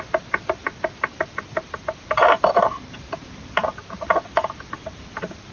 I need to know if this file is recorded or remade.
recorded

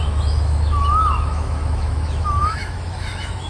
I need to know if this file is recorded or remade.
remade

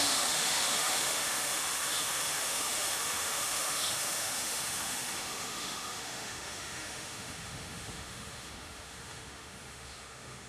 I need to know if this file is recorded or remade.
remade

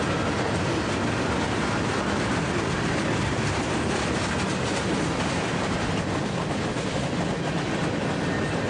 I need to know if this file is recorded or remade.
recorded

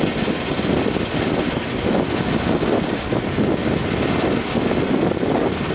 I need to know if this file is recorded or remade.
recorded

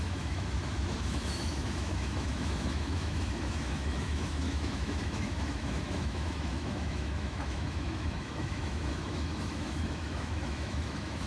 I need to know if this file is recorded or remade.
remade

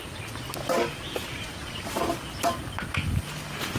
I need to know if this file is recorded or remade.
recorded